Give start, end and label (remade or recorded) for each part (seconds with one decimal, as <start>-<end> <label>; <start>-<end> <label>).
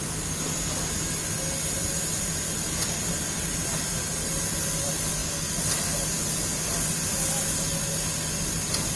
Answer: 0.0-9.0 recorded